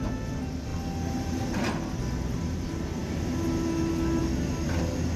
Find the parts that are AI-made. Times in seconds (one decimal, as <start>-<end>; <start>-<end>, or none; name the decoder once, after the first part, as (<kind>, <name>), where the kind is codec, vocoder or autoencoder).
none